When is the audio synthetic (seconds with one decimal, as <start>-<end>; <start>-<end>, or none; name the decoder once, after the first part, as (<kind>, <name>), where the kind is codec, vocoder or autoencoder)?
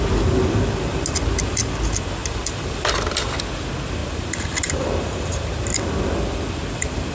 2.2-3.4 (vocoder, BigVGAN v2); 4.0-5.6